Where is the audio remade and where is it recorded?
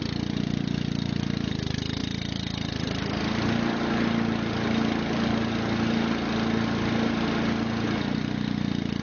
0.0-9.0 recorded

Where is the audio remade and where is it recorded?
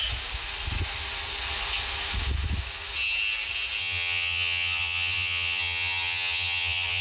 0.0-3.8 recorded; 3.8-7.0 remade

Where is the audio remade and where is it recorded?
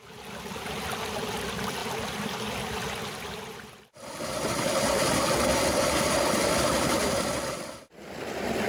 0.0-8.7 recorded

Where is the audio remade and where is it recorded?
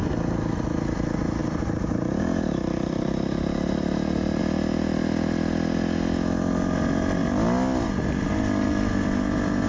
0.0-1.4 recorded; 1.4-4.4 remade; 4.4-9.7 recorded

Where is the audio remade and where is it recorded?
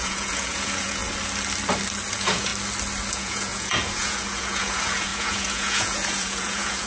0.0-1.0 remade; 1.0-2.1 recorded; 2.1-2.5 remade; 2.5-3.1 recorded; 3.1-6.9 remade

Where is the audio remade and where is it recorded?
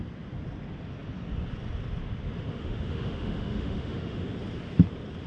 0.0-2.5 recorded; 2.5-4.3 remade; 4.3-5.3 recorded